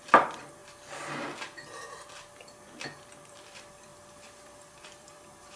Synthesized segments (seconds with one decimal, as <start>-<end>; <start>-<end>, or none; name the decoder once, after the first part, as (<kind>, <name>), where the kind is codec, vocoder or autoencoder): 0.0-0.6 (vocoder, BigVGAN v2); 3.3-5.6